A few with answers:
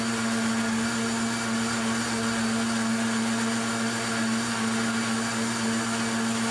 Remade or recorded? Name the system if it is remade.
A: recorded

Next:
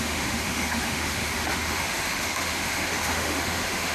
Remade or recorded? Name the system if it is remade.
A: remade, autoencoder, DAC-VAE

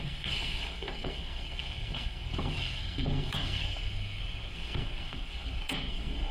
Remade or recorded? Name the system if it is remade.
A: remade, codec, SNAC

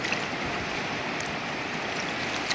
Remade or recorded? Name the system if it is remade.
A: recorded